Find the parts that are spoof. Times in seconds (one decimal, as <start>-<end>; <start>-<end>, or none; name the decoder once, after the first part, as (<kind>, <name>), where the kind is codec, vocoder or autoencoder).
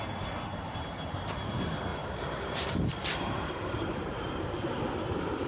0.5-1.3 (vocoder, BigVGAN v2); 1.9-4.4